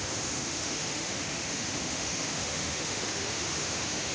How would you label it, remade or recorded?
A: remade